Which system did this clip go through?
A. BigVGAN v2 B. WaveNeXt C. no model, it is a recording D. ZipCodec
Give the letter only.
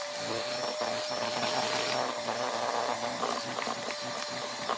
C